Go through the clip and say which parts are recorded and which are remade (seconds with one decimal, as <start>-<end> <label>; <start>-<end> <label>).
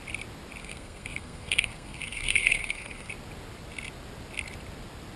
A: 0.0-0.6 recorded; 0.6-3.1 remade; 3.1-5.2 recorded